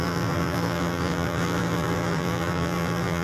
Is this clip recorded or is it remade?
remade